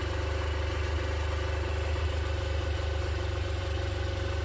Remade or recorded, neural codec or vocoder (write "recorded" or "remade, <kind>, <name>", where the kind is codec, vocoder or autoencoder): recorded